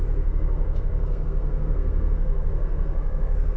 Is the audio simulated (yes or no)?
yes